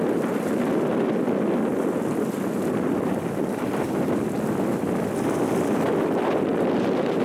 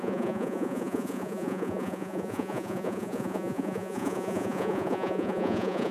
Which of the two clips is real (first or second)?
first